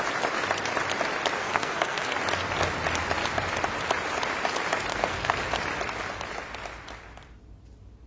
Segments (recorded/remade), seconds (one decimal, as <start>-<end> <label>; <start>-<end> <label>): 0.0-1.4 recorded; 1.4-2.1 remade; 2.1-4.9 recorded; 4.9-5.4 remade; 5.4-8.1 recorded